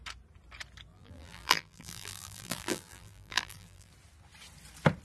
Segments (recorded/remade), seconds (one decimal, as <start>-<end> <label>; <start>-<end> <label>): 0.0-0.9 recorded; 0.9-3.9 remade; 3.9-5.0 recorded